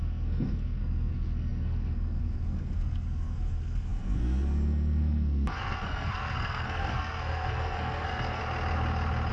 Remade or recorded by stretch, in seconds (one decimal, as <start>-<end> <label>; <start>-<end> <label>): 0.0-8.4 remade; 8.4-9.3 recorded